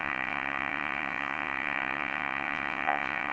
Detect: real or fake fake